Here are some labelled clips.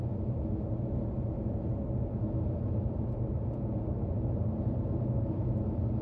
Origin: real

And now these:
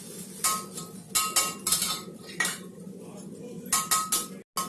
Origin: real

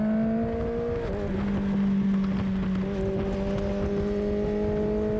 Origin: real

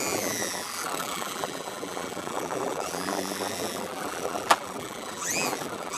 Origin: fake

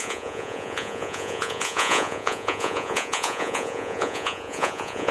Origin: fake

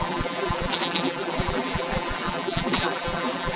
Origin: fake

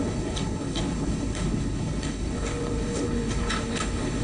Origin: fake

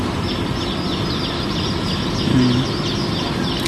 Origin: real